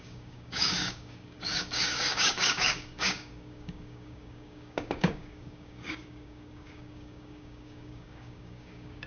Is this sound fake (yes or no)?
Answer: yes